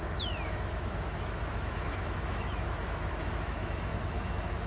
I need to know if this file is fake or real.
fake